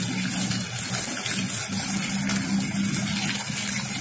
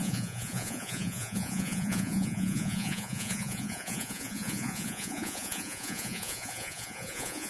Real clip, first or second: first